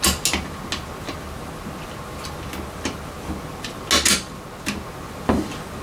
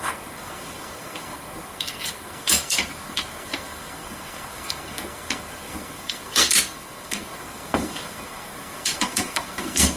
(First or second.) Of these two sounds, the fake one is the second